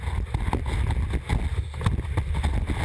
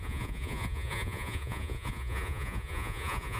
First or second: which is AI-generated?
second